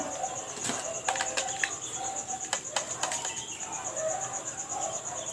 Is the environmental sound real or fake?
real